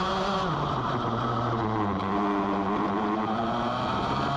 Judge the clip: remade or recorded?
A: remade